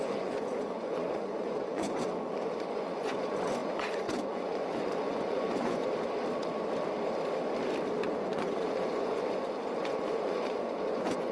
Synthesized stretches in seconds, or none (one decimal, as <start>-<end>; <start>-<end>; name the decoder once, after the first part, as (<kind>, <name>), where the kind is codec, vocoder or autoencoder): 0.0-5.8 (vocoder, Vocos); 8.0-11.3